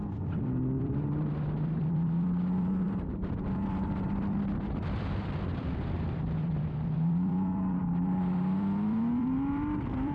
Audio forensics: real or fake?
fake